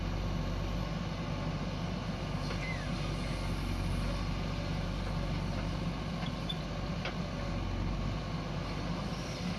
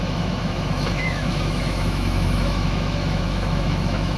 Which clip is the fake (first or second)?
second